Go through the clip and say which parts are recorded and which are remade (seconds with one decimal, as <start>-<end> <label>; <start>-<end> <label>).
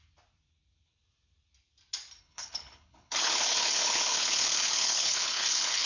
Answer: 0.0-2.2 recorded; 2.2-5.9 remade